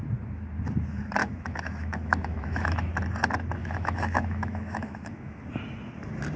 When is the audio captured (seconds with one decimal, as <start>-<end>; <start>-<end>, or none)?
0.0-1.2; 2.9-3.6; 5.4-6.4

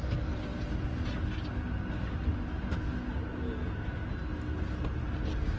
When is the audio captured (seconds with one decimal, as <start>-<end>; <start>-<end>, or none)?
0.0-5.6

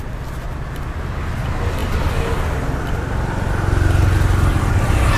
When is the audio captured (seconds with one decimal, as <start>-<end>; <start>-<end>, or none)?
0.0-5.2

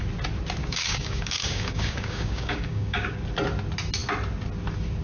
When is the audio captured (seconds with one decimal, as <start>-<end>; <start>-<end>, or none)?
0.0-0.6; 3.2-5.0

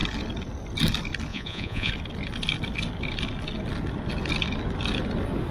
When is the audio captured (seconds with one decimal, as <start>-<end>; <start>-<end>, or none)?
0.0-1.3; 1.9-5.5

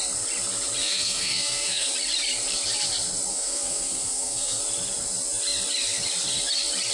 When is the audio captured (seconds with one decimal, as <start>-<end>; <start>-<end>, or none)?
0.0-0.8; 1.9-3.3; 4.6-6.9

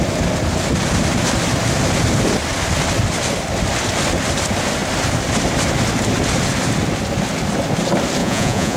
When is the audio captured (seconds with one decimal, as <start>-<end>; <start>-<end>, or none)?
0.0-8.2

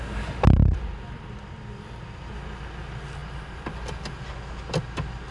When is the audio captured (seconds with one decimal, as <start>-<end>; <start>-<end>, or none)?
0.0-5.3